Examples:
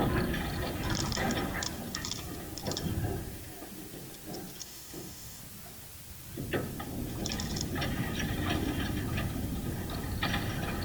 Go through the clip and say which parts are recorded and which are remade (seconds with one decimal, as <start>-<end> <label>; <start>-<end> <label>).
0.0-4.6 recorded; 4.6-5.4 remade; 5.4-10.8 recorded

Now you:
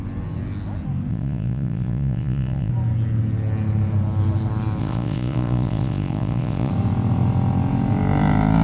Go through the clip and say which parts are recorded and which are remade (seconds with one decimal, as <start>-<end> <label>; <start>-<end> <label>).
0.0-1.1 recorded; 1.1-2.7 remade; 2.7-4.8 recorded; 4.8-6.7 remade; 6.7-8.6 recorded

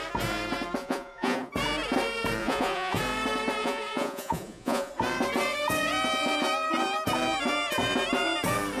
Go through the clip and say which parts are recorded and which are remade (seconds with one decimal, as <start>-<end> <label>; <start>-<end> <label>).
0.0-0.8 recorded; 0.8-1.5 remade; 1.5-2.4 recorded; 2.4-3.0 remade; 3.0-3.6 recorded; 3.6-4.9 remade; 4.9-8.8 recorded

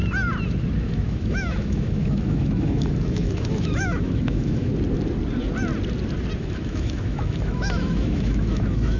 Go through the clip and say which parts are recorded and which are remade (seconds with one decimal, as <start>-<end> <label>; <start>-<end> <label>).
0.0-0.8 recorded; 0.8-4.7 remade; 4.7-6.4 recorded; 6.4-9.0 remade